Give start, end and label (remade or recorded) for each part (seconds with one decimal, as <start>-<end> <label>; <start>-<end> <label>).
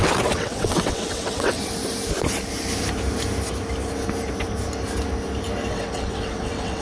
0.0-1.6 remade; 1.6-5.7 recorded; 5.7-6.8 remade